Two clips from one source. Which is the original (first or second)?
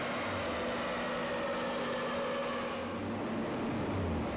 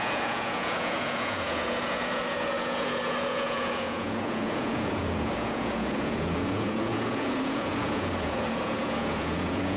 first